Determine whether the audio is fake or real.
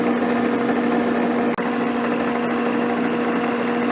real